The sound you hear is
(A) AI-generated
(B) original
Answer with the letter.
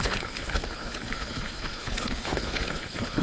A